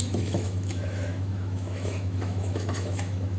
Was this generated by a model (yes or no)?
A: yes